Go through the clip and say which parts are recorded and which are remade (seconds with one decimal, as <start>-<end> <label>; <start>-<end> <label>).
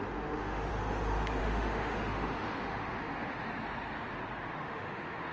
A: 0.0-0.7 remade; 0.7-1.4 recorded; 1.4-3.4 remade; 3.4-4.5 recorded; 4.5-5.3 remade